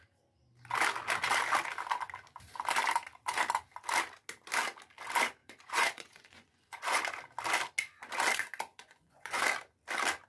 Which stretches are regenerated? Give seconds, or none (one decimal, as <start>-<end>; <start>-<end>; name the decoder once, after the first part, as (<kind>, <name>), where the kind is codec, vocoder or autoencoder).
5.4-7.0 (vocoder, Vocos); 8.7-9.4